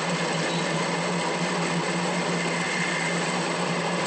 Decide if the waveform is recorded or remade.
recorded